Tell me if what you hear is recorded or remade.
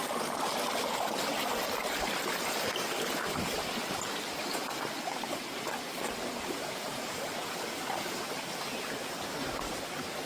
recorded